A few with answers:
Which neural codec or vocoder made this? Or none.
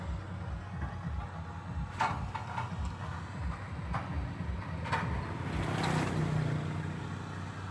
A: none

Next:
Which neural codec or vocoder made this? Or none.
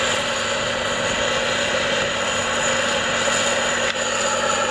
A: none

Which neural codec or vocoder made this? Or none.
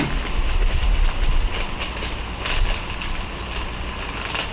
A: none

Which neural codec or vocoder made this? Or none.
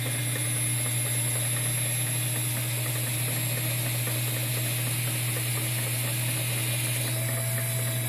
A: none